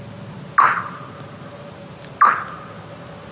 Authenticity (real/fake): real